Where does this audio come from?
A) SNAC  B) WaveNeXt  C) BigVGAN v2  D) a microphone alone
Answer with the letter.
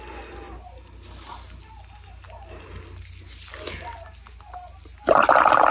D